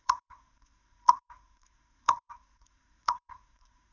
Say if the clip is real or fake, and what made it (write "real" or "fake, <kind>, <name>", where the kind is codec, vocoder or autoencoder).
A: fake, codec, SNAC